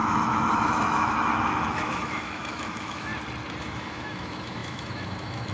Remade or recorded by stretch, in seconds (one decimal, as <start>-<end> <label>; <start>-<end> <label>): 0.0-3.1 remade; 3.1-3.6 recorded; 3.6-5.5 remade